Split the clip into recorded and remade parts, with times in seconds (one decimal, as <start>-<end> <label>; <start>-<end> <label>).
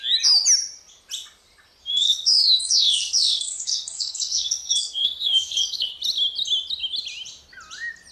0.0-1.9 recorded; 1.9-5.9 remade; 5.9-8.1 recorded